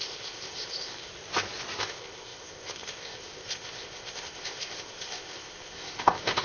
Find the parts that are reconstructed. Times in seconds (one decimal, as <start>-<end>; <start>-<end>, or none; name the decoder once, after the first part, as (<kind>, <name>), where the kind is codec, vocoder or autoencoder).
0.0-1.1 (codec, ZipCodec); 1.8-6.4